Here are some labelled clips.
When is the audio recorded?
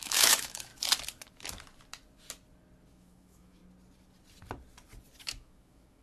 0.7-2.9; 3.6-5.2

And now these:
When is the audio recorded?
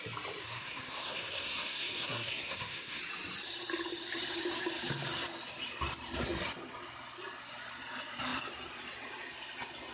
0.0-0.4; 3.0-9.9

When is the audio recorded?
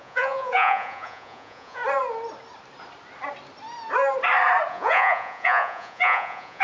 1.8-4.7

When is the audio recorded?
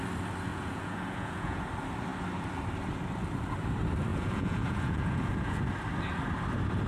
0.0-0.5; 1.6-4.1; 5.6-6.9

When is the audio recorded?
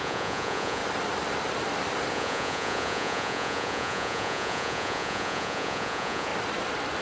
0.8-2.1; 6.3-7.0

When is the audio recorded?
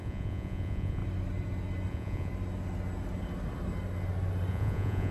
1.0-1.9; 2.3-4.5